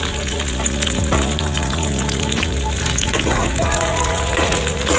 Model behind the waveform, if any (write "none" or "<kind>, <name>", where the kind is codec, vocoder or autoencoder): vocoder, Vocos